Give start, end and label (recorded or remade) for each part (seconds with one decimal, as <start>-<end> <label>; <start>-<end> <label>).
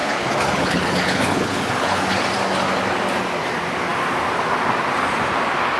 0.0-2.2 remade; 2.2-5.8 recorded